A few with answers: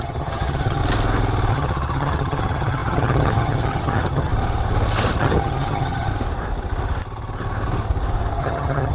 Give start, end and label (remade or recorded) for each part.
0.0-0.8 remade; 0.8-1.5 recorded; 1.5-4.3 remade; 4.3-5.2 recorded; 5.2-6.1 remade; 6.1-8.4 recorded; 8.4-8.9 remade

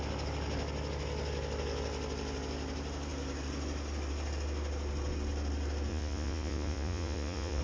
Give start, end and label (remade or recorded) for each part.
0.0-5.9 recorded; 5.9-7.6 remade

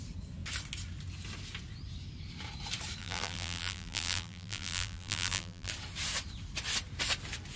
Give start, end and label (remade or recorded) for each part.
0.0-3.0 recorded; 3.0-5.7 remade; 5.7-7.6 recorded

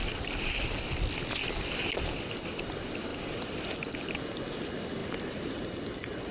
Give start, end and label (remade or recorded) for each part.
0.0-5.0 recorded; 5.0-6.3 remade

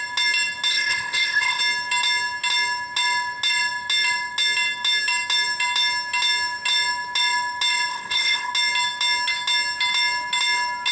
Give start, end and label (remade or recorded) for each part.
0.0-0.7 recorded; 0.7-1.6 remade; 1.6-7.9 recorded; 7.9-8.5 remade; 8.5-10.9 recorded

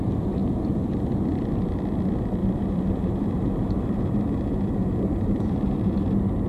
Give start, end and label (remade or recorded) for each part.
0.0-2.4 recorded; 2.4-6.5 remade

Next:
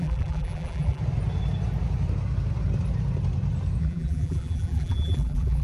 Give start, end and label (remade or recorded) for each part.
0.0-1.0 remade; 1.0-3.8 recorded; 3.8-5.6 remade

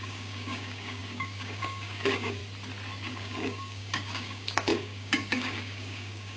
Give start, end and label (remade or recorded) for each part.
0.0-2.4 remade; 2.4-3.1 recorded; 3.1-6.4 remade